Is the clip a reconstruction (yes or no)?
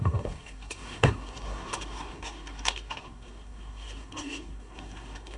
yes